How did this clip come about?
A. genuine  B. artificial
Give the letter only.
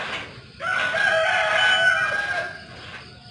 A